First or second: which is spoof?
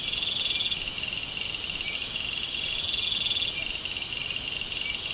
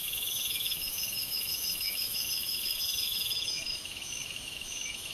second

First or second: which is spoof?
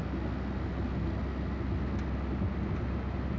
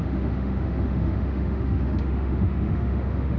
second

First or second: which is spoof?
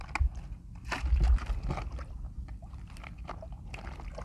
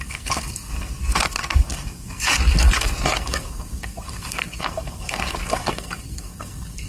second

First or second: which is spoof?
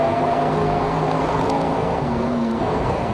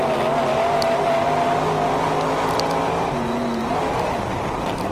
first